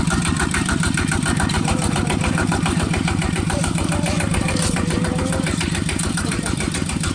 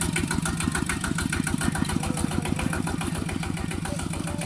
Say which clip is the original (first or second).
second